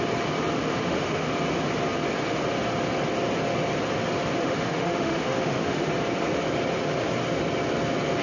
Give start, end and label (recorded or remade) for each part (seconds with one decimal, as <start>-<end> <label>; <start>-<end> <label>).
0.0-0.7 recorded; 0.7-1.3 remade; 1.3-4.4 recorded; 4.4-5.9 remade; 5.9-8.2 recorded